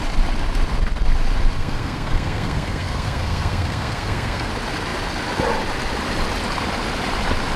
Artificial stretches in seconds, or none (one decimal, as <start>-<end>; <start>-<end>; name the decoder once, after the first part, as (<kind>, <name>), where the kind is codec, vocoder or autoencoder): 1.6-4.5 (codec, SNAC)